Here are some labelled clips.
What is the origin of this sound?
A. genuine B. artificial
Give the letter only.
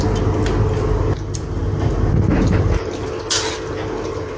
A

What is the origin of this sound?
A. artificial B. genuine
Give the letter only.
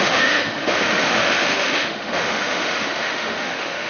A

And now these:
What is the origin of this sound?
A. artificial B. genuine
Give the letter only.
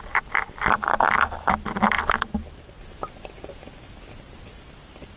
B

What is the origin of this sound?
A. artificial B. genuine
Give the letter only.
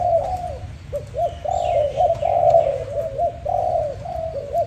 B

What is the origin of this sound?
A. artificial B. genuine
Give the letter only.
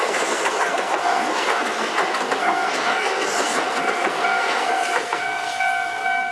A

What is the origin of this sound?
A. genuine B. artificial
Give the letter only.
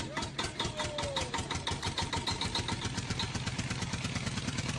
A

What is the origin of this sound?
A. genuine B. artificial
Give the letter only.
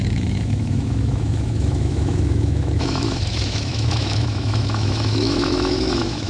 B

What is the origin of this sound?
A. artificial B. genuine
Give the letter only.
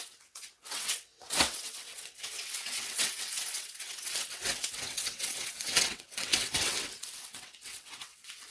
A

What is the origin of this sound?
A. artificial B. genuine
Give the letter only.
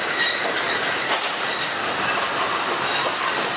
B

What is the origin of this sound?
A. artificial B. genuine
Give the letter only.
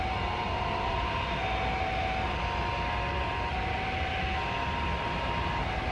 B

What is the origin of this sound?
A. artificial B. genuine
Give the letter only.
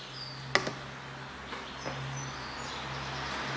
B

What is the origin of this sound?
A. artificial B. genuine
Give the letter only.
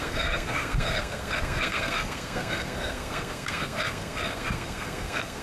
A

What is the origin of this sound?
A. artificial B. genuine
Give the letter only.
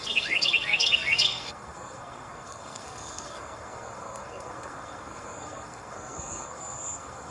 A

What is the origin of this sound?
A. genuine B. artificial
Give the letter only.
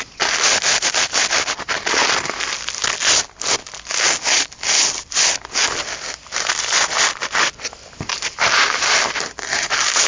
A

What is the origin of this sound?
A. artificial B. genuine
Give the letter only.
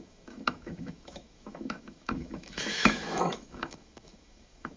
A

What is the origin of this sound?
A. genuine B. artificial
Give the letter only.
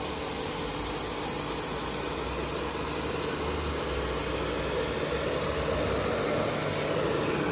A